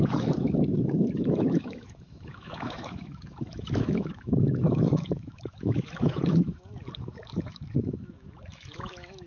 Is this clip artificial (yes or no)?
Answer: yes